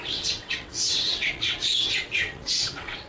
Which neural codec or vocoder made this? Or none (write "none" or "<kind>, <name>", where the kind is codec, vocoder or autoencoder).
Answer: vocoder, WaveNeXt